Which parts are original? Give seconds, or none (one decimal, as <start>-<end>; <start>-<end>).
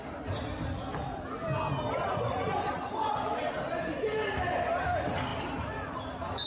0.0-2.0; 3.4-6.5